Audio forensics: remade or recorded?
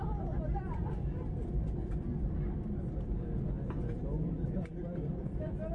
recorded